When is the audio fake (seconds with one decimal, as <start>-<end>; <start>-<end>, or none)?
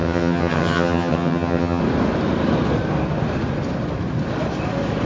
0.0-1.8